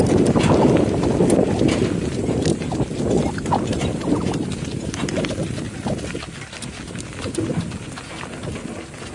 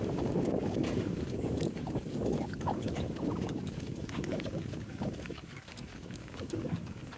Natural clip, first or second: first